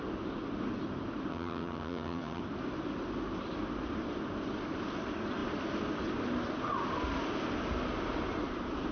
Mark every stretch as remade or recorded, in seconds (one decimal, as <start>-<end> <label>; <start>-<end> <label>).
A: 0.0-1.3 recorded; 1.3-2.4 remade; 2.4-8.9 recorded